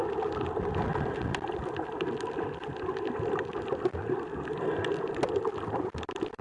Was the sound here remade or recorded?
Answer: recorded